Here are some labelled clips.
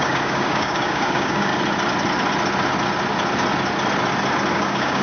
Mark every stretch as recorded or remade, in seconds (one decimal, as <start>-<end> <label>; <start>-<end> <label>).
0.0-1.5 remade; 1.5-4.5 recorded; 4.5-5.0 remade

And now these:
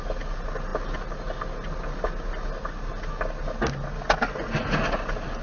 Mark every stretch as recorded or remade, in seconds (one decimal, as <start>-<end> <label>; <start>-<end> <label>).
0.0-5.4 recorded

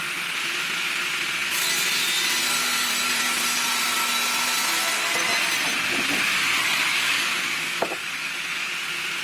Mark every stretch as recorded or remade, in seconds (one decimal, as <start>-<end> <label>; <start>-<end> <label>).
0.0-6.6 recorded; 6.6-7.3 remade; 7.3-8.0 recorded; 8.0-8.7 remade; 8.7-9.2 recorded

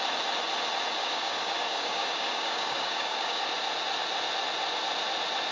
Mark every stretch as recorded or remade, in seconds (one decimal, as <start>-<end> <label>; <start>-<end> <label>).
0.0-1.0 recorded; 1.0-3.4 remade; 3.4-5.5 recorded

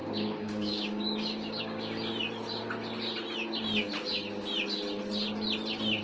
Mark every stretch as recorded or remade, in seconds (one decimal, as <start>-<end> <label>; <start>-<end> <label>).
0.0-2.1 remade; 2.1-6.0 recorded

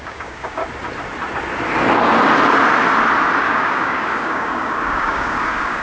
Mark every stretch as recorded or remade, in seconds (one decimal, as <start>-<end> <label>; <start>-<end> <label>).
0.0-0.6 remade; 0.6-3.4 recorded; 3.4-5.8 remade